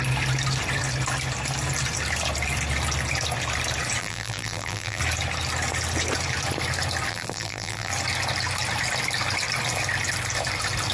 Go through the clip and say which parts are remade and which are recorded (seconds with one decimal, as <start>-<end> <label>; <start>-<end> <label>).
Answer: 0.0-4.0 recorded; 4.0-5.0 remade; 5.0-7.1 recorded; 7.1-7.9 remade; 7.9-10.9 recorded